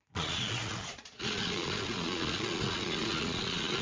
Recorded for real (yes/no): no